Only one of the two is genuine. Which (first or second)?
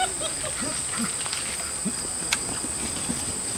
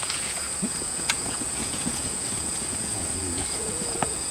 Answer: first